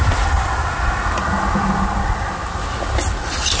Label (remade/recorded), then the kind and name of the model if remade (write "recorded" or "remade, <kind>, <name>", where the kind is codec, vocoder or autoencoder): recorded